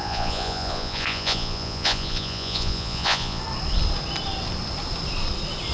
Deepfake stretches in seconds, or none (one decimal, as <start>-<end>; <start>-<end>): 0.0-3.4